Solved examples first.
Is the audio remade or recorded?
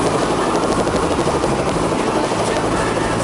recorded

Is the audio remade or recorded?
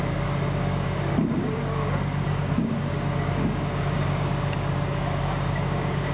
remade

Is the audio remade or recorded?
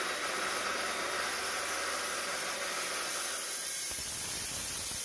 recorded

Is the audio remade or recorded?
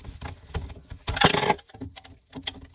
recorded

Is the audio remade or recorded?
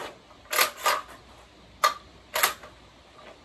recorded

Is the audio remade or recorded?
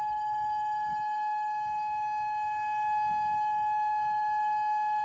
remade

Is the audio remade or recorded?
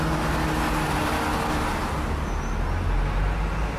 recorded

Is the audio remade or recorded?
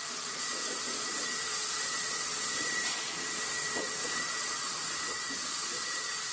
remade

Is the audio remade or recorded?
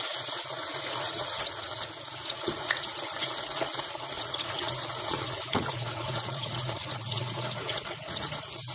remade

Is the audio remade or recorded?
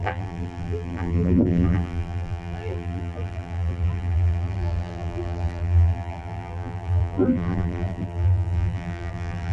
remade